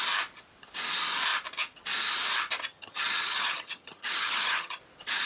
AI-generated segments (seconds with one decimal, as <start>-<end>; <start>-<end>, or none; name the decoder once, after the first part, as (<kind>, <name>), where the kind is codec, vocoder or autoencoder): 2.7-4.8 (vocoder, HiFi-GAN)